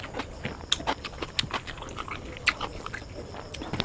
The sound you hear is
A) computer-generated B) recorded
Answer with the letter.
B